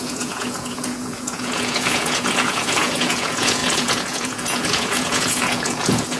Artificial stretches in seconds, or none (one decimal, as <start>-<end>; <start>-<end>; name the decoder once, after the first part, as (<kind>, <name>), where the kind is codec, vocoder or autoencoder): 0.0-6.2 (vocoder, Vocos)